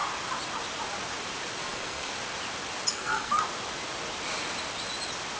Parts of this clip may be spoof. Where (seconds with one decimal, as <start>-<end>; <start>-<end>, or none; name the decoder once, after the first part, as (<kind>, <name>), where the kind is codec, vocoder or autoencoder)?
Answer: 1.6-2.1 (codec, SNAC); 2.9-3.4